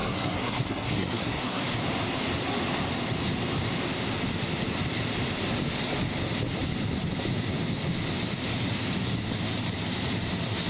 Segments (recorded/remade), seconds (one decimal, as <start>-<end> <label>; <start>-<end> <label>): 0.0-1.6 remade; 1.6-10.7 recorded

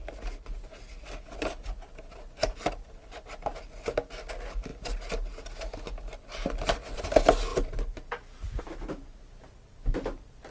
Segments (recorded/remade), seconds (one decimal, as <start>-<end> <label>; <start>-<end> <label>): 0.0-10.5 recorded

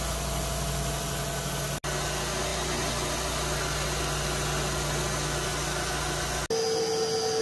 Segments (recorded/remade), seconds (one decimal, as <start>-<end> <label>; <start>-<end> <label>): 0.0-7.4 recorded

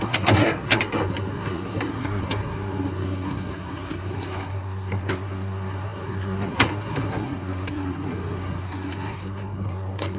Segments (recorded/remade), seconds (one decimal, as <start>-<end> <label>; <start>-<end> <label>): 0.0-10.2 remade